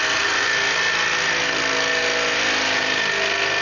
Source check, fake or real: real